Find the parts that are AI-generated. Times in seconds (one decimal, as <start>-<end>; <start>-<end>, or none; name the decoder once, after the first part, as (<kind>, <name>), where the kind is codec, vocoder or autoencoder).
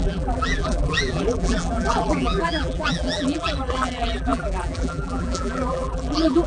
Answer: 0.0-6.5 (vocoder, BigVGAN v2)